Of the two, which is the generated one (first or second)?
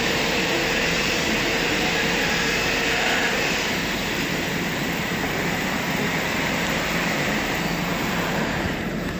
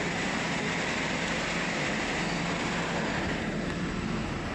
first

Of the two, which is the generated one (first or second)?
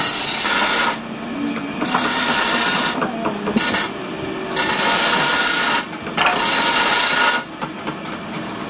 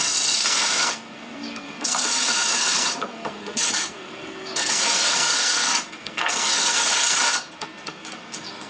second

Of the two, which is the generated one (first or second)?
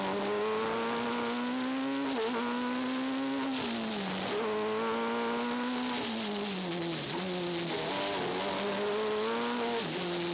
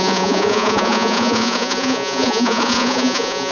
second